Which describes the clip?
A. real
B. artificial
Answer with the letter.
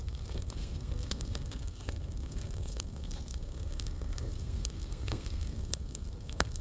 B